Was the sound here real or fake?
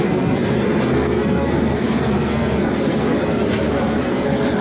fake